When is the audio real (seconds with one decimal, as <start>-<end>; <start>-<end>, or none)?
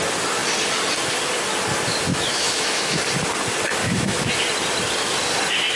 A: 0.0-2.1; 3.0-3.8; 4.4-5.8